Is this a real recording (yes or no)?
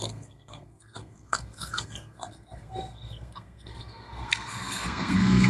no